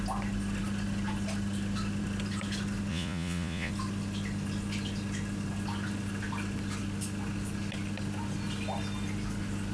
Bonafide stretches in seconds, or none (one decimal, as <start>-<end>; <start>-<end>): 0.0-2.9; 3.7-9.7